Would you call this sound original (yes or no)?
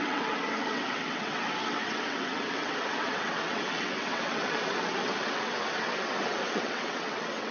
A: no